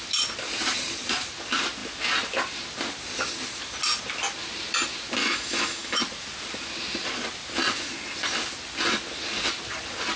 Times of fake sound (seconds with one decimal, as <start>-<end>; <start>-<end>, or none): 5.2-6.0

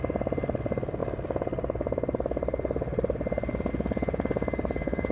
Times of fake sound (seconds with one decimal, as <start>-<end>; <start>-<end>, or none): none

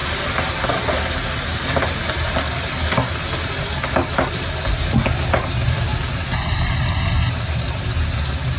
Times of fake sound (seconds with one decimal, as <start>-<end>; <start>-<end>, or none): none

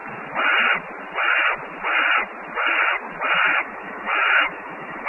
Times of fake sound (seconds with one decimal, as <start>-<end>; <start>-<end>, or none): 3.5-5.1

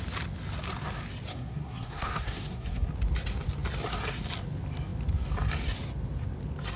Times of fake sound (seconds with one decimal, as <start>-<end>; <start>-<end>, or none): 1.3-2.9